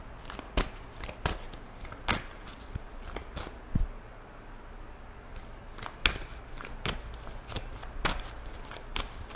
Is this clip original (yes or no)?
yes